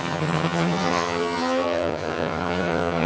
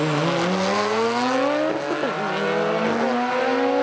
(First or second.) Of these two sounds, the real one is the second